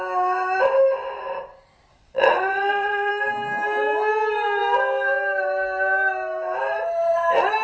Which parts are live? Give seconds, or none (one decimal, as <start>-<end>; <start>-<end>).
0.0-1.9; 3.1-7.6